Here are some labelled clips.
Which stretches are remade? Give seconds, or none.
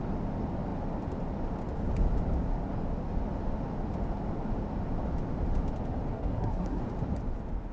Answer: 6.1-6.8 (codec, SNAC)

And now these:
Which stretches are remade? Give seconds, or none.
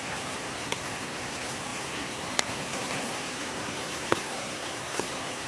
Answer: 0.0-5.5 (codec, SNAC)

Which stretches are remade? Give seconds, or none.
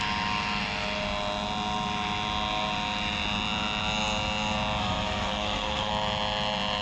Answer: 4.8-5.9 (codec, SNAC)